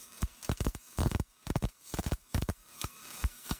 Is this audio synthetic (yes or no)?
yes